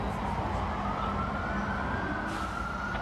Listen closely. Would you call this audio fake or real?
real